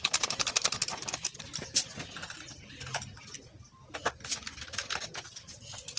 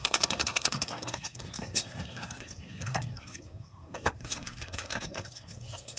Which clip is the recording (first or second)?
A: first